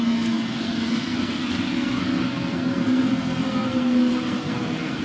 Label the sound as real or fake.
fake